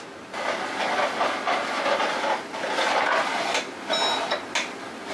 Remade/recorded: recorded